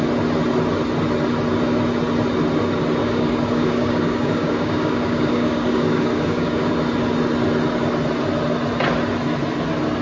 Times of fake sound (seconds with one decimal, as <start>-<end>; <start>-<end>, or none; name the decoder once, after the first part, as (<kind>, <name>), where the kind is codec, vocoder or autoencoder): 3.0-6.7 (codec, DAC)